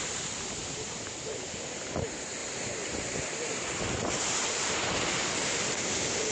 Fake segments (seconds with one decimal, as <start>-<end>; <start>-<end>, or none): 2.4-4.9